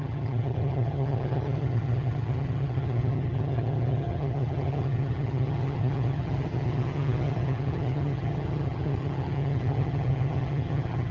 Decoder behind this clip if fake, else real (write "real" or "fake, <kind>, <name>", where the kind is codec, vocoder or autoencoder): fake, vocoder, HiFi-GAN